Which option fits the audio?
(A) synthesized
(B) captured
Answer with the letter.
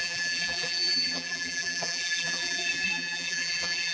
A